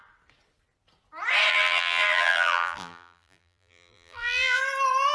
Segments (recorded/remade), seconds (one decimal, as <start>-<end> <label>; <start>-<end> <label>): 0.0-1.5 recorded; 1.5-4.6 remade; 4.6-5.1 recorded